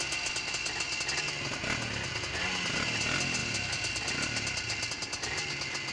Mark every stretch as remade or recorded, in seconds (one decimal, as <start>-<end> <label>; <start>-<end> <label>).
0.0-5.9 recorded

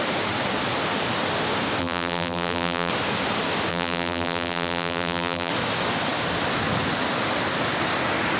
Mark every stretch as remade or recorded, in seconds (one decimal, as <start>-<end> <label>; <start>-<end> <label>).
0.0-1.8 recorded; 1.8-2.9 remade; 2.9-3.7 recorded; 3.7-5.5 remade; 5.5-8.4 recorded